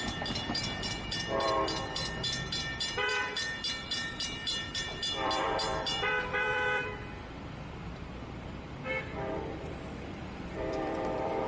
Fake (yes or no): yes